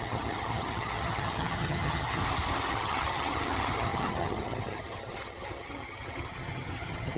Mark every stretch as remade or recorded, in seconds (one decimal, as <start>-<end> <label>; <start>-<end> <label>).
0.0-2.2 remade; 2.2-2.7 recorded; 2.7-7.2 remade

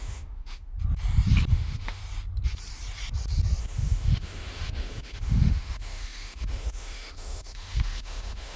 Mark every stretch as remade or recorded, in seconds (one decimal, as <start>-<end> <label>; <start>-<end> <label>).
0.0-0.7 remade; 0.7-1.5 recorded; 1.5-2.0 remade; 2.0-3.6 recorded; 3.6-8.6 remade

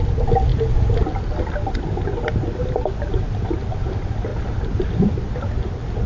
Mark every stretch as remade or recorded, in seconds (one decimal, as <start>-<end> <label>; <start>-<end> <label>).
0.0-6.1 recorded

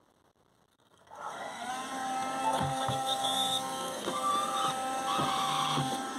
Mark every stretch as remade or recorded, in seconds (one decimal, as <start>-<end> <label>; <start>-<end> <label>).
0.0-0.7 recorded; 0.7-1.7 remade; 1.7-2.4 recorded; 2.4-4.3 remade; 4.3-6.2 recorded